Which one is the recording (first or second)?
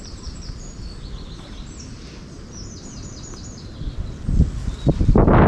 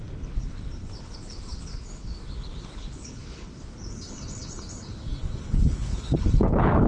first